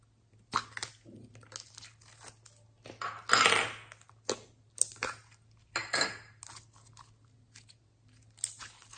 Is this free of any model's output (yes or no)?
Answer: yes